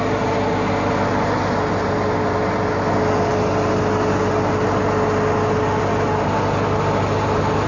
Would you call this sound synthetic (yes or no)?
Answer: no